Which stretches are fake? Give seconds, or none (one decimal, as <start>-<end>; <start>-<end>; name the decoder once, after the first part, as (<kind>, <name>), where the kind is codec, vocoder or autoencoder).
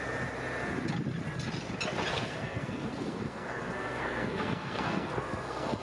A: 2.1-5.8 (codec, SNAC)